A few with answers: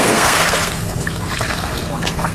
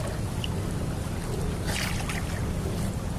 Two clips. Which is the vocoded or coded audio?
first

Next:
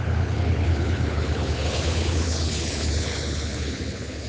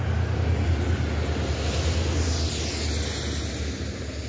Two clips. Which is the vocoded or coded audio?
first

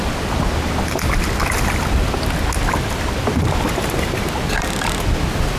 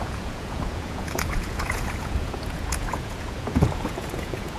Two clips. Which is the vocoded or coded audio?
second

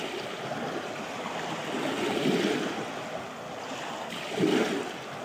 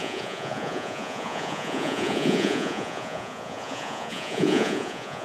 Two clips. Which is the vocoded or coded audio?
second